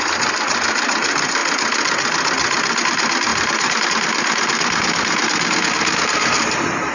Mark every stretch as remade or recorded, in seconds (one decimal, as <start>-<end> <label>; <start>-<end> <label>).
0.0-1.4 remade; 1.4-2.8 recorded; 2.8-6.9 remade

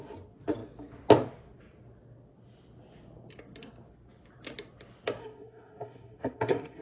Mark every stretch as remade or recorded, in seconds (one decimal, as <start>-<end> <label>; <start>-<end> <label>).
0.0-5.2 recorded; 5.2-6.8 remade

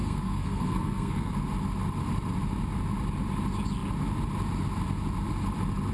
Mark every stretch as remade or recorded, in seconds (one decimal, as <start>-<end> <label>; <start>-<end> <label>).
0.0-1.3 remade; 1.3-5.9 recorded

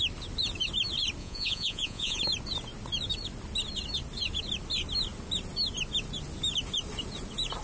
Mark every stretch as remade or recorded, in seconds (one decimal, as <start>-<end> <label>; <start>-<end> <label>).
0.0-1.2 recorded; 1.2-2.2 remade; 2.2-7.6 recorded

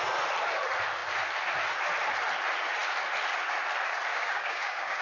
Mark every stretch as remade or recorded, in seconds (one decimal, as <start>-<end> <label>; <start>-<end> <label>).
0.0-4.1 recorded; 4.1-5.0 remade